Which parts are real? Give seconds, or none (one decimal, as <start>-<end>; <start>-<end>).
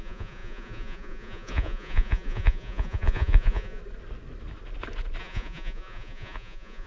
3.8-5.2